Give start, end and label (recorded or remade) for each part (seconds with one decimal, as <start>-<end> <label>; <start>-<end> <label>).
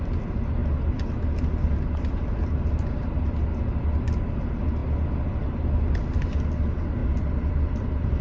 0.0-8.2 recorded